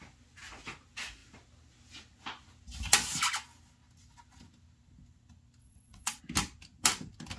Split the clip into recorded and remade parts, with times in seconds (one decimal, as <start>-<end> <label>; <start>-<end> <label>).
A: 0.0-5.6 recorded; 5.6-6.2 remade; 6.2-7.4 recorded